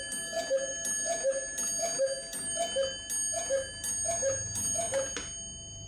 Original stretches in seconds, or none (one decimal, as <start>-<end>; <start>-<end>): 0.0-5.9